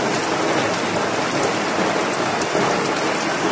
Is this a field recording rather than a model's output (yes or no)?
yes